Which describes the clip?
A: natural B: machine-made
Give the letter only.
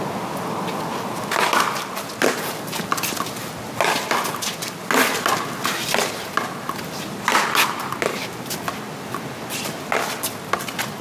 A